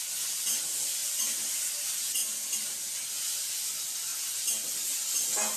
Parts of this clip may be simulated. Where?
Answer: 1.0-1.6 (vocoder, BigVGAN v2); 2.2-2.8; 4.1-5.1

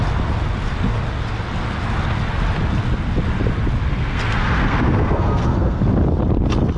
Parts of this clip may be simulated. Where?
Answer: 3.9-5.8 (codec, SNAC)